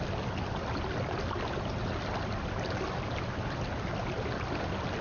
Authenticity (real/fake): real